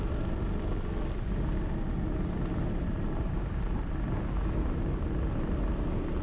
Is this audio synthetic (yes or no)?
no